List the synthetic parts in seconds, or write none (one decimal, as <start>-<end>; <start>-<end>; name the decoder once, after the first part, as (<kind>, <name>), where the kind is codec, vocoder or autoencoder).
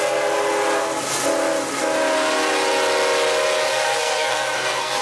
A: 3.7-5.0 (codec, SNAC)